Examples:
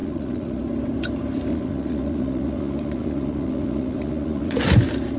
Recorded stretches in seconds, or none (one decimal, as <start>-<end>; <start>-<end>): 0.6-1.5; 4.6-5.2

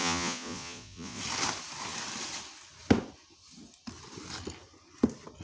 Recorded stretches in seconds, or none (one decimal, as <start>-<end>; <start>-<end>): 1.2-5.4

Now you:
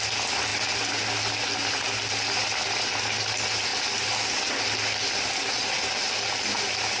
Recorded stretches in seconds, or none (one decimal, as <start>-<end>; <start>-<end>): 0.0-7.0

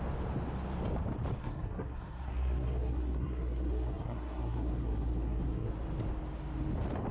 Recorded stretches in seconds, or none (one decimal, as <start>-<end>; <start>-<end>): 0.0-1.4; 5.7-7.1